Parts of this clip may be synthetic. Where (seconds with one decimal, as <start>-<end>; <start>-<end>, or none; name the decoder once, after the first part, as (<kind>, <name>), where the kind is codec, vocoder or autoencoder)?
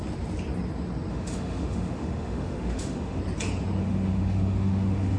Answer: 1.1-3.2 (autoencoder, DAC-VAE); 3.8-5.2